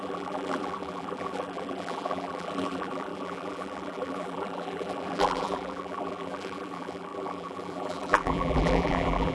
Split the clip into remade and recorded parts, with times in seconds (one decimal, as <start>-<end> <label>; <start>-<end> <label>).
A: 0.0-9.3 remade